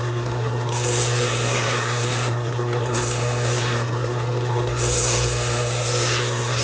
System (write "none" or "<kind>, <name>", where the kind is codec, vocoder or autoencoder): codec, SNAC